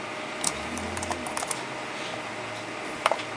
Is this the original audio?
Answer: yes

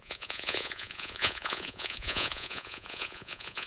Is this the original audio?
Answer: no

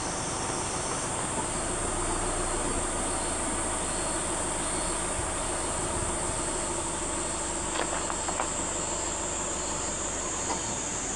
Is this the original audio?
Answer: yes